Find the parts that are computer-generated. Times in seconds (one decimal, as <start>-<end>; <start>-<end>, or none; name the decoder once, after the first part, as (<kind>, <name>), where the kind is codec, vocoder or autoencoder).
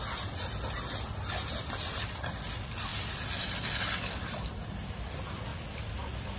none